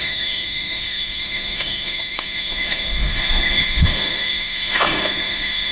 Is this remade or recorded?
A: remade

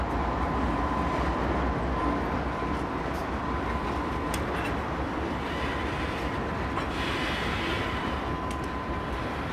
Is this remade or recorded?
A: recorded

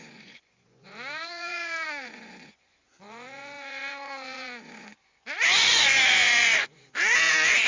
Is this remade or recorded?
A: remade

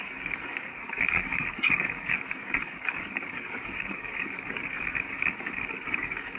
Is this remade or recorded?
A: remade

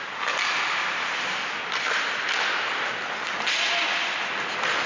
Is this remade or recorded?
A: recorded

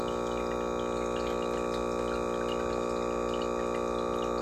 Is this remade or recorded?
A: recorded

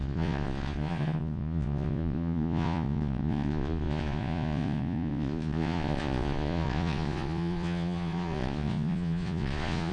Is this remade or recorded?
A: remade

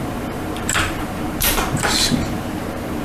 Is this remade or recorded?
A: remade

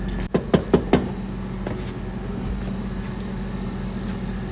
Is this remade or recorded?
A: recorded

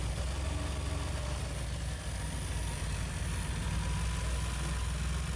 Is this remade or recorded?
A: recorded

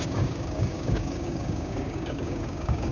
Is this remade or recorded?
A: remade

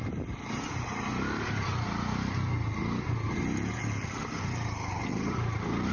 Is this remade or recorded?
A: recorded